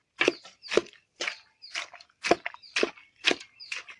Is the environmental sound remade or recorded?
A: recorded